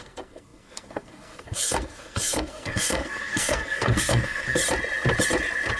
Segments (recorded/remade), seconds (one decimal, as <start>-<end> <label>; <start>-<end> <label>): 0.0-4.6 remade; 4.6-5.8 recorded